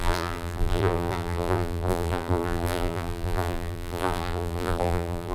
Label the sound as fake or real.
fake